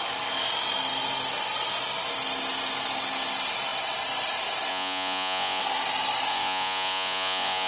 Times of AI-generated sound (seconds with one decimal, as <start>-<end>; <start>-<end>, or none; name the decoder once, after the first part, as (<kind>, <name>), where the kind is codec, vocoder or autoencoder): 4.7-5.6 (vocoder, Vocos); 6.3-7.7